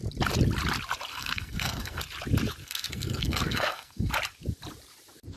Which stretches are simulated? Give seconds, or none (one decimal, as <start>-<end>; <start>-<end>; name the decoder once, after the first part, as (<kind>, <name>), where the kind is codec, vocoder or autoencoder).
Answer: 1.1-2.0 (codec, SNAC); 2.6-4.1